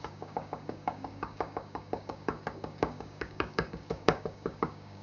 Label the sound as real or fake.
fake